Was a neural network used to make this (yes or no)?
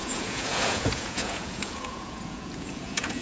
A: yes